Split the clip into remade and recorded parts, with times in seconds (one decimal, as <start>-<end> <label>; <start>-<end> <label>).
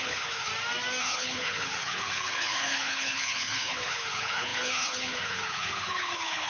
0.0-0.5 remade; 0.5-1.0 recorded; 1.0-6.5 remade